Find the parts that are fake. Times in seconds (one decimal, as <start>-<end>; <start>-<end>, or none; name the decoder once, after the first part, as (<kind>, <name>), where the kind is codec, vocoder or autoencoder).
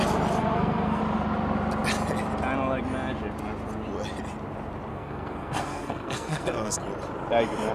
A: 0.4-1.0 (codec, SNAC); 4.9-6.8